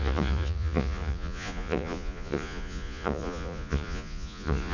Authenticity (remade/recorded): remade